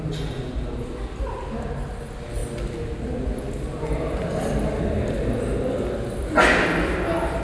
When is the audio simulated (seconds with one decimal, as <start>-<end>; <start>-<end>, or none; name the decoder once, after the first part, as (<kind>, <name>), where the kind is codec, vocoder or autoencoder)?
none